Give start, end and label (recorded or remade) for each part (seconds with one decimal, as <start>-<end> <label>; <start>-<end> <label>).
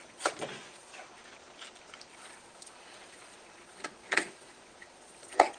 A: 0.0-0.9 remade; 0.9-2.1 recorded; 2.1-5.6 remade